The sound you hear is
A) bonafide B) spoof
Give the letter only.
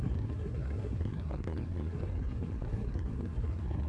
B